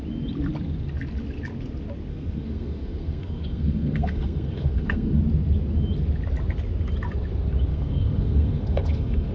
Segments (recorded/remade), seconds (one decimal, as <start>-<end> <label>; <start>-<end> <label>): 0.0-2.1 recorded; 2.1-5.2 remade; 5.2-7.7 recorded; 7.7-9.3 remade